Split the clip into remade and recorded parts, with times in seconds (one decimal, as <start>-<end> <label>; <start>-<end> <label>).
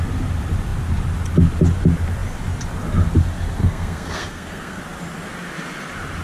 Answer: 0.0-3.6 recorded; 3.6-4.8 remade; 4.8-6.2 recorded